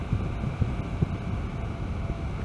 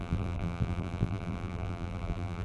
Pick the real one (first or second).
first